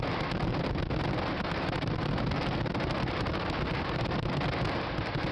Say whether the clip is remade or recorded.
recorded